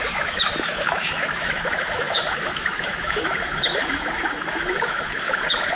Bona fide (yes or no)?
no